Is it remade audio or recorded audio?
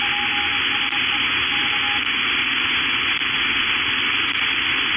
recorded